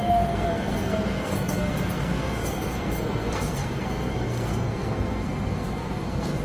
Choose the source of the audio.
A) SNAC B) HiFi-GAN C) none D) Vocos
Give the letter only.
A